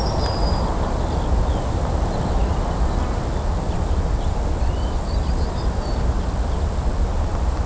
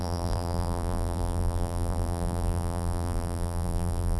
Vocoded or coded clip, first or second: second